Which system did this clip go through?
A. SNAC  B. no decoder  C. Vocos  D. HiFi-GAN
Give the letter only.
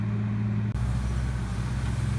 B